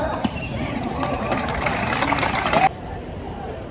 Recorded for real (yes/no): no